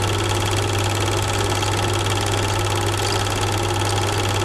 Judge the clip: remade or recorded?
recorded